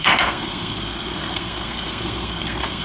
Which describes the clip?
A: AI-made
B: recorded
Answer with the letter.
A